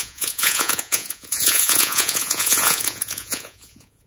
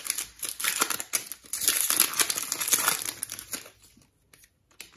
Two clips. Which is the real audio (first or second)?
second